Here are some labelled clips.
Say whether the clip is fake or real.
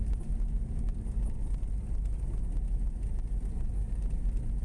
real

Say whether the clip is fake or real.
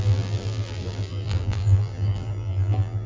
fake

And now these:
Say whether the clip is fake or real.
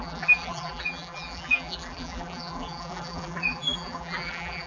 fake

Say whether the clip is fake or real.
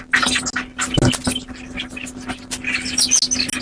real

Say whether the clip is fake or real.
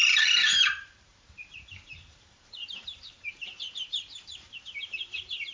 fake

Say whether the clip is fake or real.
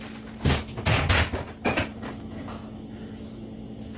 real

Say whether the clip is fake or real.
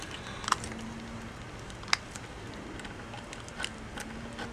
real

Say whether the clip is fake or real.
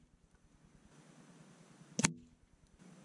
real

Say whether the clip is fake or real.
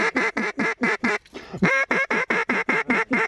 fake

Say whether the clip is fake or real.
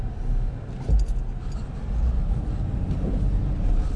real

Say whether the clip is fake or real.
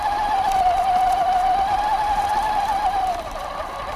fake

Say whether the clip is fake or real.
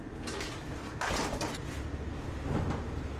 real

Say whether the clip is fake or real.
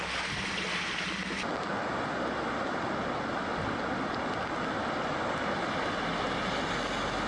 real